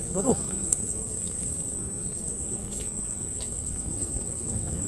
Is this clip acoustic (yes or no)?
no